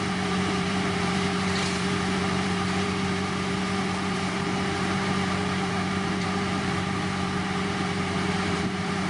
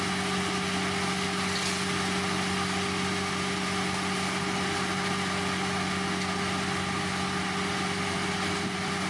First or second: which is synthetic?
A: first